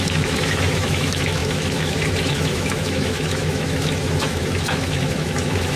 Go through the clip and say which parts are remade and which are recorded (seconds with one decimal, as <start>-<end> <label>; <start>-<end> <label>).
0.0-5.8 remade